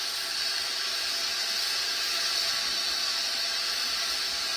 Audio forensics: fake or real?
real